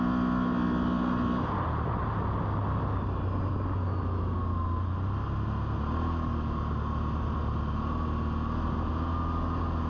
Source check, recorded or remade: recorded